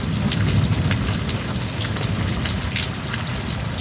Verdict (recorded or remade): recorded